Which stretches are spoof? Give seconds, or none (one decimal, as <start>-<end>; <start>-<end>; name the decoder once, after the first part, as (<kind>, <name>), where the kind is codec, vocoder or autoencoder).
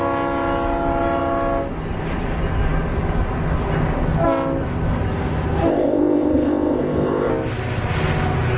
5.7-7.3 (codec, ZipCodec)